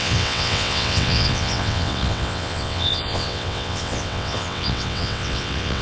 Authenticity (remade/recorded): remade